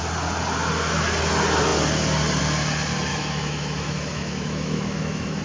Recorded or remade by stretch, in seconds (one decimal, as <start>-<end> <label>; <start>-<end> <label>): 0.0-3.1 recorded; 3.1-5.4 remade